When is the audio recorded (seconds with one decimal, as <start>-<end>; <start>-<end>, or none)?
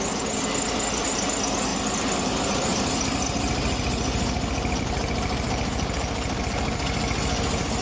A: 0.0-7.8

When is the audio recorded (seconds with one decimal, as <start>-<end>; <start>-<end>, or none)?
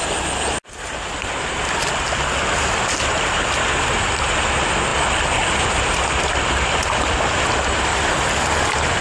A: 0.0-9.0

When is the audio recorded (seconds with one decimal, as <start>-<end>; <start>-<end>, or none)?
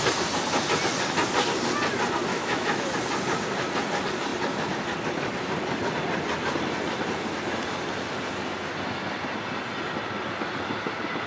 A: 0.0-2.3; 2.8-11.3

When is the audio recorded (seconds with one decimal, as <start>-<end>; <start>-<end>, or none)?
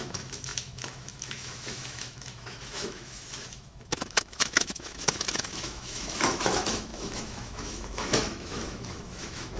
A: none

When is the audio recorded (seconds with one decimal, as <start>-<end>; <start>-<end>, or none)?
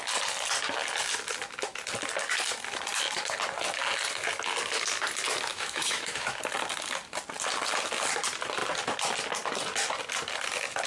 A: 0.0-5.5; 6.4-10.9